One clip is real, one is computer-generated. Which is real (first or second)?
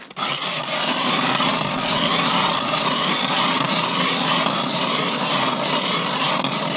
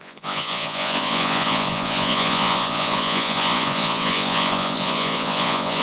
first